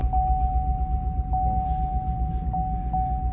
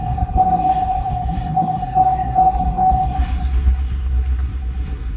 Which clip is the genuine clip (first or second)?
first